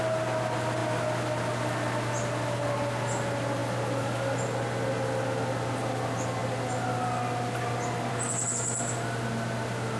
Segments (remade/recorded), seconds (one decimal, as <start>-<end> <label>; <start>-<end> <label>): 0.0-10.0 recorded